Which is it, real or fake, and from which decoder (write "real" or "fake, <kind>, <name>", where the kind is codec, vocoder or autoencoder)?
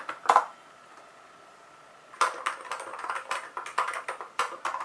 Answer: real